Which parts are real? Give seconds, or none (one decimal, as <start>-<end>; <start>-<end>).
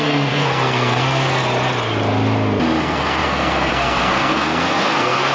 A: 1.4-2.8